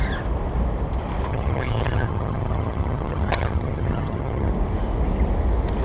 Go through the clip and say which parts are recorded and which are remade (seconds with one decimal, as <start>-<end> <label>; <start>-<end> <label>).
0.0-1.3 recorded; 1.3-4.5 remade; 4.5-5.8 recorded